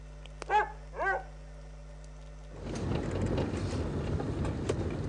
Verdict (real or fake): real